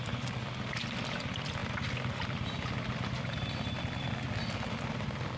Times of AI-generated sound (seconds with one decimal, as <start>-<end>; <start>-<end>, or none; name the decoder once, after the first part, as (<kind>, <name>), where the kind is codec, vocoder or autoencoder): none